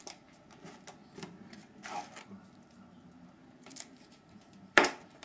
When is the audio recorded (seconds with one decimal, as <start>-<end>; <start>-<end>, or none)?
1.0-2.2